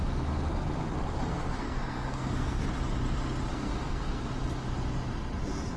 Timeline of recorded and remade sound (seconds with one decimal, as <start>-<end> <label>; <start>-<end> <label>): 0.0-1.3 recorded; 1.3-2.6 remade; 2.6-3.5 recorded; 3.5-4.2 remade; 4.2-5.8 recorded